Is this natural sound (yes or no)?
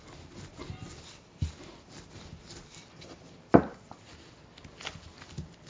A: yes